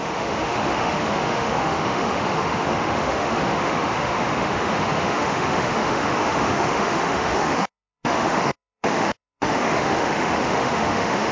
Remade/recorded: remade